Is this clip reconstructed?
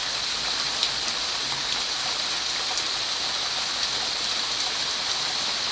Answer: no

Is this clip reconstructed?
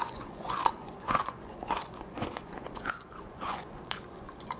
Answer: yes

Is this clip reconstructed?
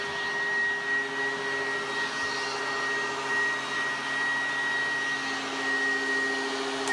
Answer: no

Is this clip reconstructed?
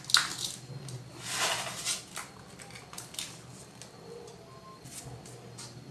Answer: no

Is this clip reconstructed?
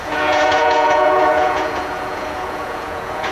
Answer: yes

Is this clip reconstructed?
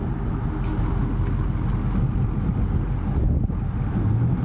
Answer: no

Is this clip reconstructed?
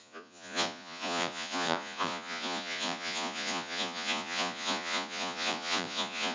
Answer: yes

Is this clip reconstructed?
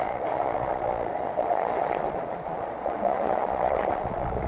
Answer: yes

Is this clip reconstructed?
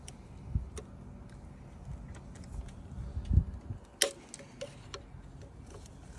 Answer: no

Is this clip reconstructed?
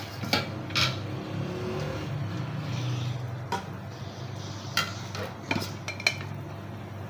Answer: no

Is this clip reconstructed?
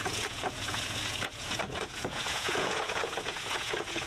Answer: yes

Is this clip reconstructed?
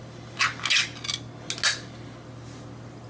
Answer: no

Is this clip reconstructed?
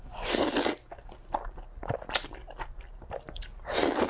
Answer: no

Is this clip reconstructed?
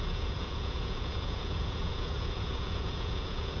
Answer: yes